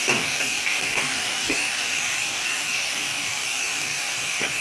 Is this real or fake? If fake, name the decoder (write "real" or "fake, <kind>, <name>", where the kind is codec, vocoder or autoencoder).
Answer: fake, codec, DAC